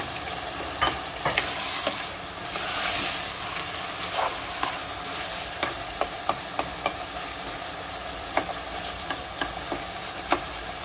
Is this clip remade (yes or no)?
no